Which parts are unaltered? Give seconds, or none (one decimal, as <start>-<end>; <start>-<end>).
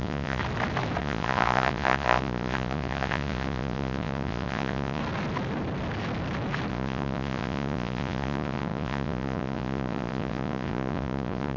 0.4-1.0; 5.0-6.7